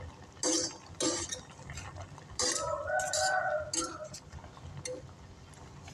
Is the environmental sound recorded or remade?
recorded